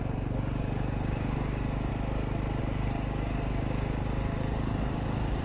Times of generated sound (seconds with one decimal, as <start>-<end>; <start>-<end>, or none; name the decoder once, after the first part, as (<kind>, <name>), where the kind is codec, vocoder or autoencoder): 0.0-1.9 (codec, DAC); 2.6-5.4